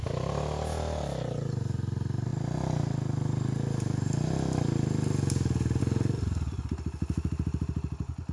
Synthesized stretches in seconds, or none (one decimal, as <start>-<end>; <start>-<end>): none